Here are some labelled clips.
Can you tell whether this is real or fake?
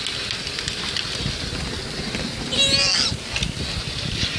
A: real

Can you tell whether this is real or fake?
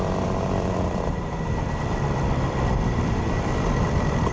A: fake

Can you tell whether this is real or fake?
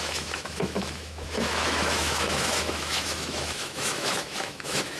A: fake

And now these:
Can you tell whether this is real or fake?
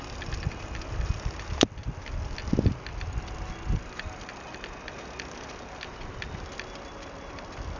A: real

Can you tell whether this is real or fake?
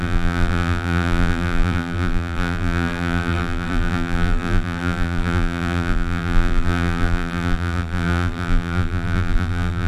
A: fake